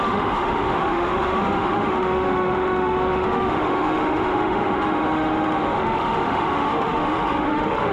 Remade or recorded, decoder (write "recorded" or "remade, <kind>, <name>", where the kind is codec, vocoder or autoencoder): remade, autoencoder, DAC-VAE